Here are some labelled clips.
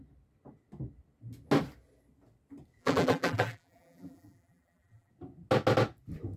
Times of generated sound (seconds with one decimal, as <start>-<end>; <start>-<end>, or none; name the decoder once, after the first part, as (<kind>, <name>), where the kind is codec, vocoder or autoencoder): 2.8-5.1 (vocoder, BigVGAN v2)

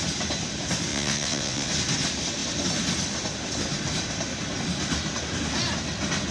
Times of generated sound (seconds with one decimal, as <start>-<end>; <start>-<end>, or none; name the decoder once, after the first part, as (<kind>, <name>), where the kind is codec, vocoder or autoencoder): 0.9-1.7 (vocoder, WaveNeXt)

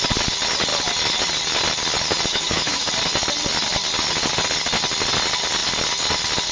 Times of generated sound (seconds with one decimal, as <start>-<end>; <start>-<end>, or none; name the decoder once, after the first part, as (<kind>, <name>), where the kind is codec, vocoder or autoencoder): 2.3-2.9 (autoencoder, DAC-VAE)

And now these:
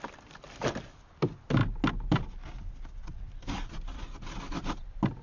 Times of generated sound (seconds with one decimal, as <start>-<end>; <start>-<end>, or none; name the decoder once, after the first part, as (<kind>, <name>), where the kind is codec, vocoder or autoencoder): none